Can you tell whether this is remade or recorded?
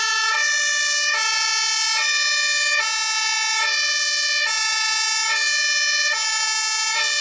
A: recorded